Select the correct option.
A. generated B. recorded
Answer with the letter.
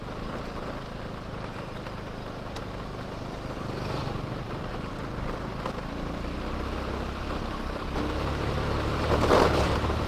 B